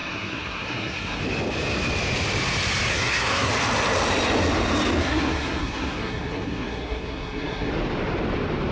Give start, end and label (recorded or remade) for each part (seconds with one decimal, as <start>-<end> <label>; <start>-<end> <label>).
0.0-1.2 remade; 1.2-2.9 recorded; 2.9-3.5 remade; 3.5-5.0 recorded; 5.0-7.7 remade; 7.7-8.7 recorded